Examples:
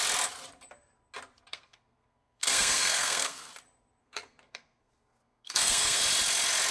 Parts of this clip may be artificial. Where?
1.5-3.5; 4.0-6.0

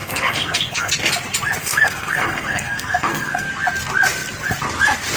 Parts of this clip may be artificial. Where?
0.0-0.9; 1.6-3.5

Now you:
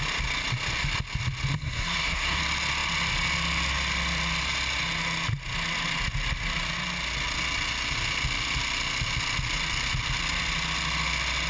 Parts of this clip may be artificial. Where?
1.5-2.4

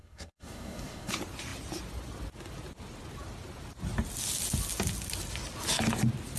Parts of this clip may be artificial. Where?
0.0-1.1

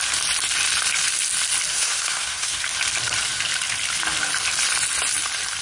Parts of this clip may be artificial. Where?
1.7-2.6